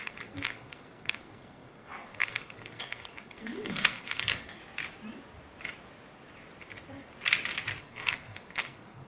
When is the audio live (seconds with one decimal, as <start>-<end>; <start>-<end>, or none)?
4.6-7.8